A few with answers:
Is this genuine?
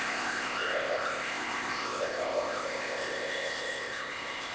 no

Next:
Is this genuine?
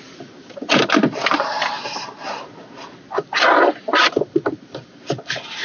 no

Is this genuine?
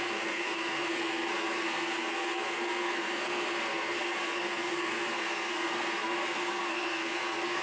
no